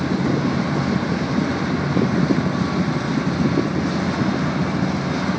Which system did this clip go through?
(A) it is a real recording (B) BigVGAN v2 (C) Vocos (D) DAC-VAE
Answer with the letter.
A